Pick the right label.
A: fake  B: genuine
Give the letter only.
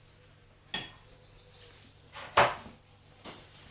B